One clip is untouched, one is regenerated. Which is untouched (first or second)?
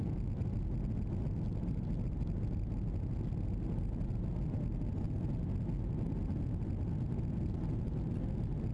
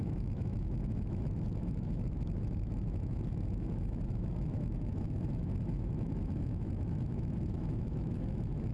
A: first